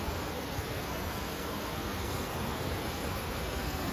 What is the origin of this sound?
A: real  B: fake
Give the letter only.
B